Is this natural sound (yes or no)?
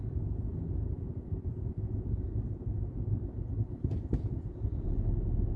yes